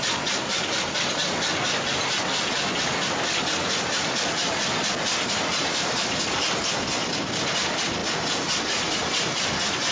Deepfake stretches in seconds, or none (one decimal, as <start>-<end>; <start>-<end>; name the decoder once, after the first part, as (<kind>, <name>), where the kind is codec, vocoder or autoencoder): none

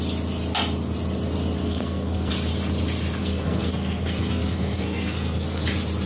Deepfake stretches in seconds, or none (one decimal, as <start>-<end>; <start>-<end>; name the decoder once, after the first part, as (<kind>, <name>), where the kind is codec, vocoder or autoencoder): 1.6-2.3 (codec, SNAC); 3.2-5.6

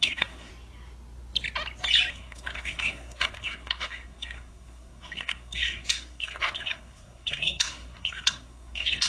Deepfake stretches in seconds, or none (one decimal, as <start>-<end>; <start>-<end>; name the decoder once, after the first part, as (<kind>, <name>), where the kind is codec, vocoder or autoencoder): 0.0-0.5 (codec, SNAC); 2.1-9.1

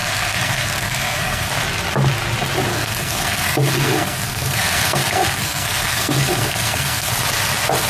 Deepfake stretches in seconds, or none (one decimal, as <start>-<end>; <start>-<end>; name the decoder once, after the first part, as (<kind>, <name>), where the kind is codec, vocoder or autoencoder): 0.0-1.5 (codec, SNAC); 2.7-7.1

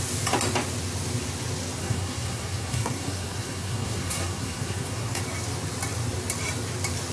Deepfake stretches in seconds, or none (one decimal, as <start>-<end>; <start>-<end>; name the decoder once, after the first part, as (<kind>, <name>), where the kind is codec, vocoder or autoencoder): 1.8-5.2 (codec, SNAC)

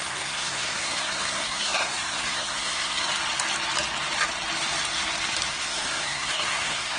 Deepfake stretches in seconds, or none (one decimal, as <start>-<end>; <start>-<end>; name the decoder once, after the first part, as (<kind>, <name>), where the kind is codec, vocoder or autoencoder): 0.0-3.1 (codec, SNAC); 5.5-7.0